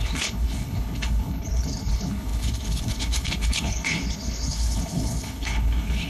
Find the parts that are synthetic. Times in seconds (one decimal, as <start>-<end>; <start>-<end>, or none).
0.0-6.1